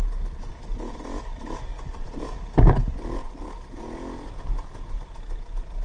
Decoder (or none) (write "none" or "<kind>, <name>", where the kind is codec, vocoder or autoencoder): none